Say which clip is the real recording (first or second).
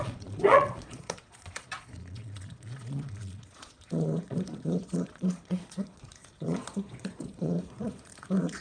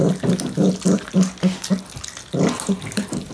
second